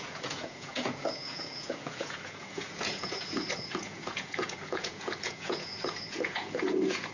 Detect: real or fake fake